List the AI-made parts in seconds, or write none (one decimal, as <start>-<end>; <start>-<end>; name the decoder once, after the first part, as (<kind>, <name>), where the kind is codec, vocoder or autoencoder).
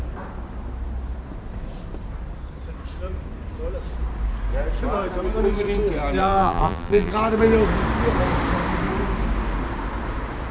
6.2-7.1 (vocoder, BigVGAN v2)